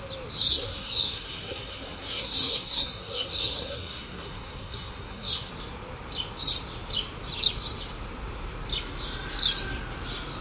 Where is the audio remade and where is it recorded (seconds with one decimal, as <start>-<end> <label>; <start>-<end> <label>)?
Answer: 0.0-0.5 recorded; 0.5-5.5 remade; 5.5-10.4 recorded